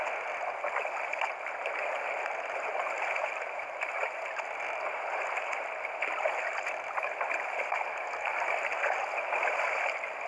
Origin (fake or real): real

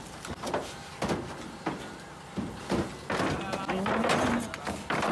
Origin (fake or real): real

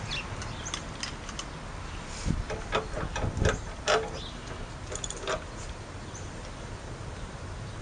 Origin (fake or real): real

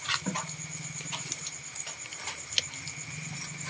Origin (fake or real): real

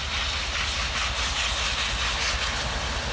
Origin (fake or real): real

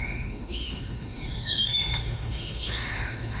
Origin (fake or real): fake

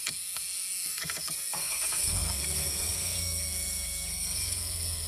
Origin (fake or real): fake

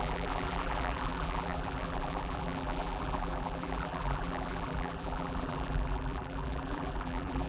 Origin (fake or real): fake